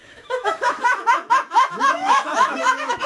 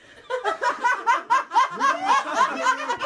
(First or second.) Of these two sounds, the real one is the second